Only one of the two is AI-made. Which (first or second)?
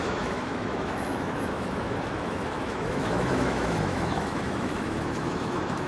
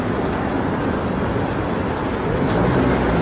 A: first